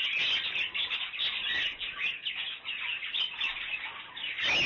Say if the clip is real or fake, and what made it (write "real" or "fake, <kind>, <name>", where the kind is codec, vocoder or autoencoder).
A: real